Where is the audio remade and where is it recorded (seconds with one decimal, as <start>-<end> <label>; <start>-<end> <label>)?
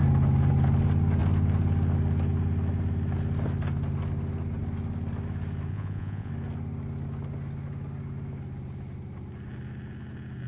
0.0-5.7 recorded; 5.7-6.3 remade; 6.3-10.5 recorded